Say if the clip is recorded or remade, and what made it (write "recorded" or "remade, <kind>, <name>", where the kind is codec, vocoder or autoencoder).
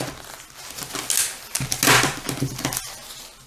recorded